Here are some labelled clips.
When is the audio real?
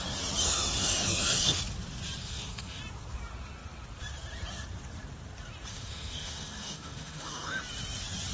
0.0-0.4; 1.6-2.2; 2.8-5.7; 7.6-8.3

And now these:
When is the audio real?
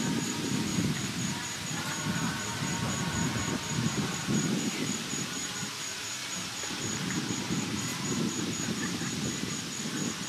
0.0-0.7; 5.5-6.2; 7.1-7.9; 9.6-10.3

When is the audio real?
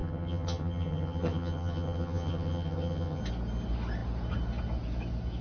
3.2-5.4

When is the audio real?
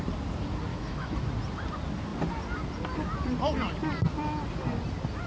0.0-0.7; 1.2-5.3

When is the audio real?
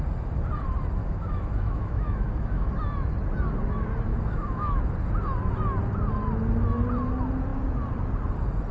0.0-1.0; 2.7-4.1; 4.8-8.7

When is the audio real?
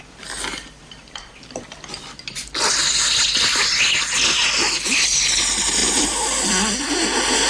0.0-7.5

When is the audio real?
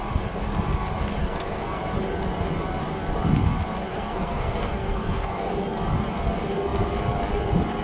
0.0-1.2; 1.8-3.9; 5.5-7.8